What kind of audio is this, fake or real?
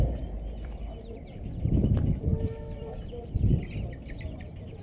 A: fake